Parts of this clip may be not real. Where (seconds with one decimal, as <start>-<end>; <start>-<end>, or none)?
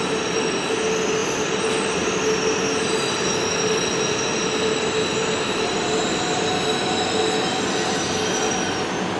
none